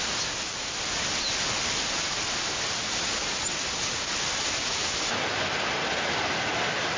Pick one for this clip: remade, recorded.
recorded